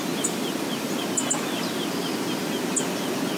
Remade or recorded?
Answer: recorded